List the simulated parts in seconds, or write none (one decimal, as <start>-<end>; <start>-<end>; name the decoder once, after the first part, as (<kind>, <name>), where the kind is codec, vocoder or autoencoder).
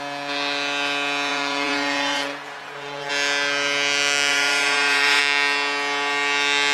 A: 1.3-3.1 (vocoder, Vocos); 4.3-5.2